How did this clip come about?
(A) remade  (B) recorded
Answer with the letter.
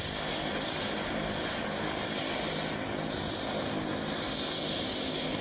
B